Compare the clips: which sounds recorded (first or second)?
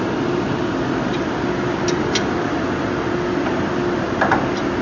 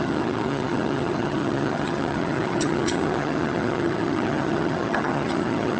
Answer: first